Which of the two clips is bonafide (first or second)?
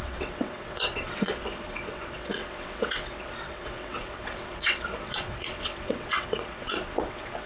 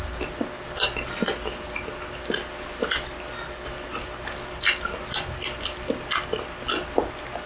second